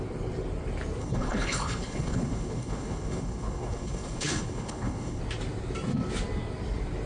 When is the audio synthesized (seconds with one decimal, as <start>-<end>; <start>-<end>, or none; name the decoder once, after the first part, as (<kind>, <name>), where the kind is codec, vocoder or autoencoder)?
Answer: 1.0-5.2 (codec, HILCodec)